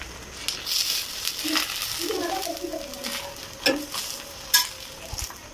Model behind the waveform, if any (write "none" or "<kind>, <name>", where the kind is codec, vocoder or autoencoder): none